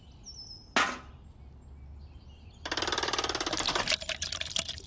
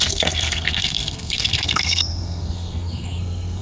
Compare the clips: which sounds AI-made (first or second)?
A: second